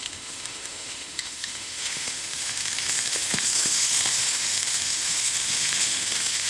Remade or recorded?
remade